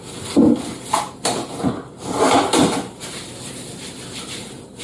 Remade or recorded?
recorded